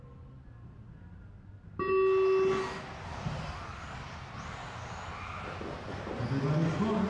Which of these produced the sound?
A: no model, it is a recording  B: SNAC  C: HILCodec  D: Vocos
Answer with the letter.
A